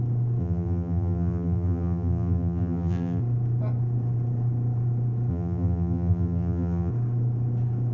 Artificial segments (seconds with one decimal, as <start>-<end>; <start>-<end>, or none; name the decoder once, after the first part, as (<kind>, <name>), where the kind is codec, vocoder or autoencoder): 0.4-3.2 (vocoder, BigVGAN v2); 5.3-6.9